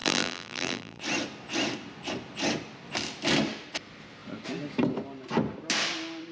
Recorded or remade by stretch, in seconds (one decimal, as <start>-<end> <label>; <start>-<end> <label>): 0.0-1.0 remade; 1.0-6.3 recorded